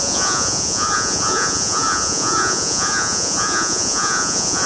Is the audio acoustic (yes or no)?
no